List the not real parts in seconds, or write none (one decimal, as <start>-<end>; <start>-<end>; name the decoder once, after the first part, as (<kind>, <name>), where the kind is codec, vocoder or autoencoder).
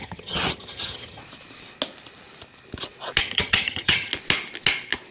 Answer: 0.0-1.2 (vocoder, HiFi-GAN); 3.2-4.1